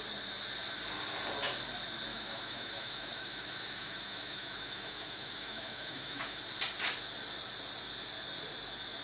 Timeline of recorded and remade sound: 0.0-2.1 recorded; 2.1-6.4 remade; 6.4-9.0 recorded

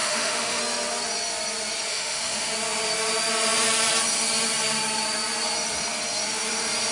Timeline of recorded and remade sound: 0.0-0.6 remade; 0.6-1.9 recorded; 1.9-2.5 remade; 2.5-6.9 recorded

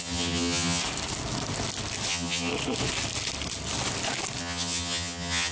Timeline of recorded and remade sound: 0.0-0.8 remade; 0.8-2.1 recorded; 2.1-2.5 remade; 2.5-4.4 recorded; 4.4-5.5 remade